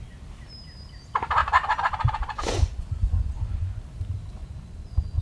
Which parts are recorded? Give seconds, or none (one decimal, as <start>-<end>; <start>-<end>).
0.0-1.4; 3.8-4.4